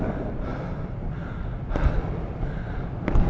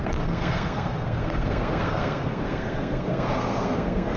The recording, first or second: first